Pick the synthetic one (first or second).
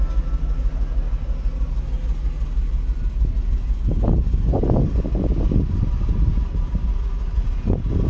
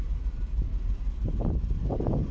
second